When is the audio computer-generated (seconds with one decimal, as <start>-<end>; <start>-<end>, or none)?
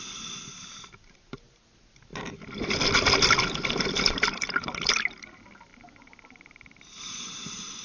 none